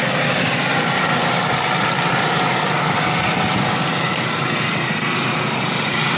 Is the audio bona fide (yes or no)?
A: no